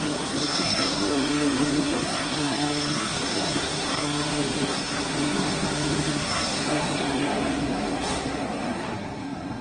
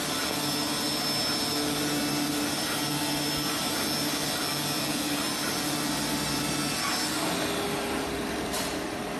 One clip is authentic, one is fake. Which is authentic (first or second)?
second